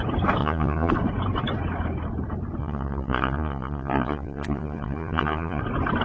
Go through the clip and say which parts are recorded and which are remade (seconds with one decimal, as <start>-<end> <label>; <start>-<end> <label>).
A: 0.0-0.4 recorded; 0.4-0.9 remade; 0.9-2.6 recorded; 2.6-5.6 remade; 5.6-6.0 recorded